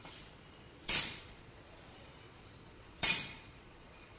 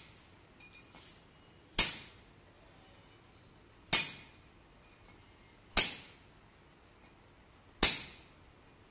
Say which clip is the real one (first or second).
second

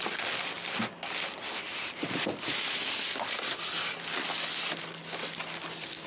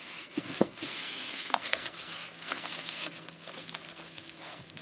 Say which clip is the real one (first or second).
first